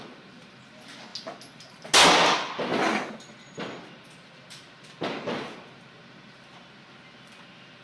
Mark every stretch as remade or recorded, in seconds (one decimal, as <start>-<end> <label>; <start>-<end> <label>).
0.0-7.8 recorded

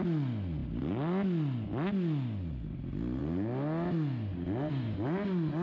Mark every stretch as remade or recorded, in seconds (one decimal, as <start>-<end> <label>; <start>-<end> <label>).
0.0-5.6 recorded